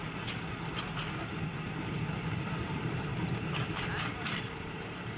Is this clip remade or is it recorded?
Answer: recorded